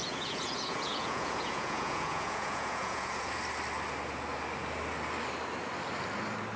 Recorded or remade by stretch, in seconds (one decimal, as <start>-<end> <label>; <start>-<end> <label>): 0.0-3.3 remade; 3.3-6.6 recorded